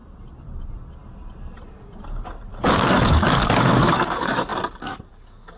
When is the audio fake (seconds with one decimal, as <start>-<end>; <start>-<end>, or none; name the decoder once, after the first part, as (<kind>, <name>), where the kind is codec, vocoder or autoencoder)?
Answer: 2.6-4.5 (codec, DAC); 5.1-5.6